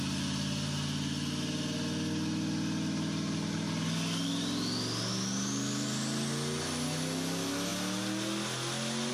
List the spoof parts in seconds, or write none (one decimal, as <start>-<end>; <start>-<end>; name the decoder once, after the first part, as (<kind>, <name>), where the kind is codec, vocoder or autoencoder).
none